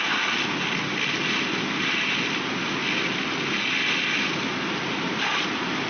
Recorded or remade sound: recorded